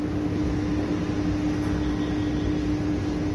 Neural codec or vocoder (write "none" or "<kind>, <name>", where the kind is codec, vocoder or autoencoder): none